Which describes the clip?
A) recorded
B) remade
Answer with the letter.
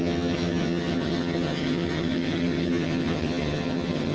B